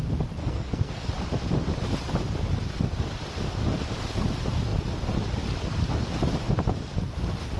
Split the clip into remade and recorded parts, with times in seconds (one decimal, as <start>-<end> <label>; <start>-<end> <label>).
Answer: 0.0-0.4 recorded; 0.4-1.1 remade; 1.1-7.6 recorded